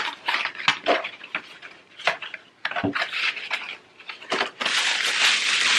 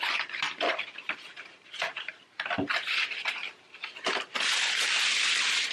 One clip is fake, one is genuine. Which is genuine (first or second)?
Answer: first